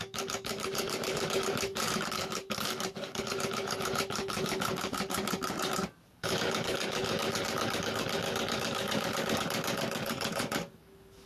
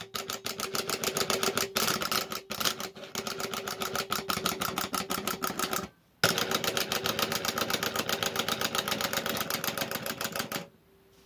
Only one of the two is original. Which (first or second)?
second